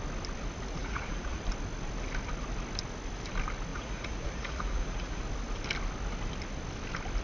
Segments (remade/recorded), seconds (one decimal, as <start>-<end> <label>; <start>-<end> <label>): 0.0-0.8 recorded; 0.8-1.4 remade; 1.4-3.7 recorded; 3.7-5.2 remade; 5.2-7.2 recorded